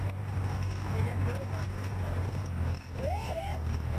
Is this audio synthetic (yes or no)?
yes